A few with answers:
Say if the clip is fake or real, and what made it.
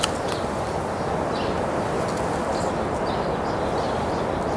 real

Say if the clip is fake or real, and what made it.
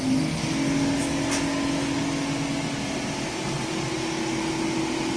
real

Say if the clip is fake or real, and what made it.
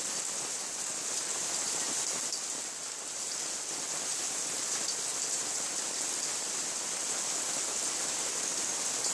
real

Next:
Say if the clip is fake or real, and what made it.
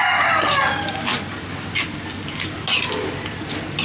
real